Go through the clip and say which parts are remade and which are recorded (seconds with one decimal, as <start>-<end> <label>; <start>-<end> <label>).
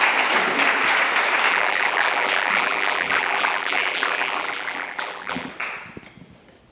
0.0-1.5 recorded; 1.5-5.5 remade; 5.5-6.7 recorded